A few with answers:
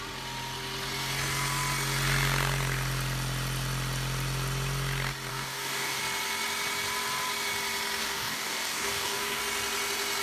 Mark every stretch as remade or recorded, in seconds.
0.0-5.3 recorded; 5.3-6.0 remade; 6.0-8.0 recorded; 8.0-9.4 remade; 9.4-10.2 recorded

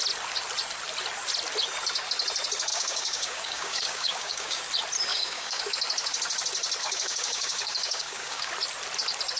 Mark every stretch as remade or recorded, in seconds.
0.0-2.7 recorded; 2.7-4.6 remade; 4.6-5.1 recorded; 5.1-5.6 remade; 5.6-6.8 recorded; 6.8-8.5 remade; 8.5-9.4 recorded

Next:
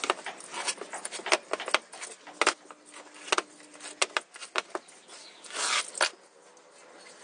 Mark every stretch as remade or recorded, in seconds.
0.0-5.2 recorded; 5.2-5.8 remade; 5.8-7.2 recorded

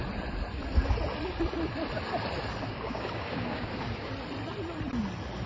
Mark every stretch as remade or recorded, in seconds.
0.0-2.6 recorded; 2.6-4.1 remade; 4.1-5.5 recorded

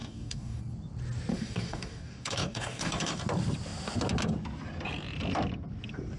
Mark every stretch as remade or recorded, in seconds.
0.0-0.6 remade; 0.6-1.3 recorded; 1.3-3.2 remade; 3.2-6.2 recorded

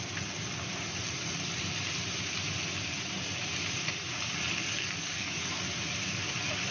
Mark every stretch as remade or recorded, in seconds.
0.0-4.5 recorded; 4.5-5.5 remade; 5.5-6.7 recorded

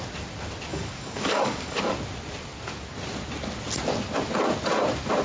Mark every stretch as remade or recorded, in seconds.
0.0-0.7 recorded; 0.7-1.8 remade; 1.8-5.2 recorded

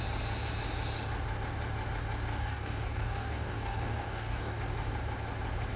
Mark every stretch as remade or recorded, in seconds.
0.0-2.3 recorded; 2.3-4.6 remade; 4.6-5.8 recorded